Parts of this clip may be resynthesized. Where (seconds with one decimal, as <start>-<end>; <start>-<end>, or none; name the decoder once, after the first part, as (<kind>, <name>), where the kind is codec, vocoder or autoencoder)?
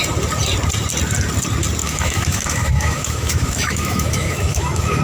1.8-5.0 (autoencoder, DAC-VAE)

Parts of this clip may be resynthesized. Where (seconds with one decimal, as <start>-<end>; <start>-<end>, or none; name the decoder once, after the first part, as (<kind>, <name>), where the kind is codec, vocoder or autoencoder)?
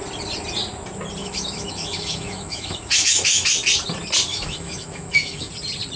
1.2-3.5 (autoencoder, DAC-VAE); 4.3-5.5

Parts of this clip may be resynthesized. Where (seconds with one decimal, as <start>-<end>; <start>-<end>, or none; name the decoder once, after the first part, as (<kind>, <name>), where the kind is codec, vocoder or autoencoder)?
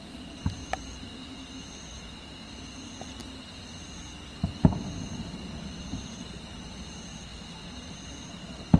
0.6-2.5 (autoencoder, DAC-VAE); 7.3-7.9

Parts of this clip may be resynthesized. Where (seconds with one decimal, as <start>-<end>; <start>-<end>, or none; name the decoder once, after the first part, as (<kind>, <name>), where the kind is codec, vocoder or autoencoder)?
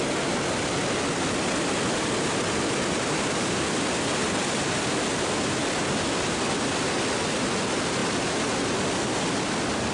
none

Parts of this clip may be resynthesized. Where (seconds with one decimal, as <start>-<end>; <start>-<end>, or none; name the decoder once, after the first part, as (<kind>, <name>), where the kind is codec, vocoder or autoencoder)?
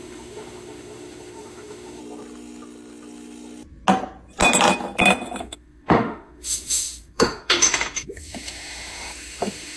0.0-2.0 (autoencoder, DAC-VAE); 5.4-9.8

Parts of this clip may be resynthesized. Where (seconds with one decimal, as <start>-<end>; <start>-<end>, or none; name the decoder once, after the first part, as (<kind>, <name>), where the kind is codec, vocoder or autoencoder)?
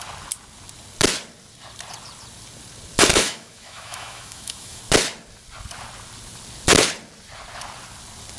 3.1-4.8 (autoencoder, DAC-VAE)